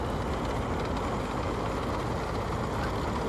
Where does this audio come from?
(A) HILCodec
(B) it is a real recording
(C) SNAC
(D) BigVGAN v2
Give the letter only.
B